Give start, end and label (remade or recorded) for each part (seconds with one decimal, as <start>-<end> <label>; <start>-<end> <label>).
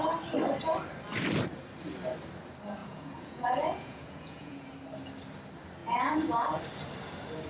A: 0.0-2.8 recorded; 2.8-4.7 remade; 4.7-5.8 recorded; 5.8-6.6 remade; 6.6-7.5 recorded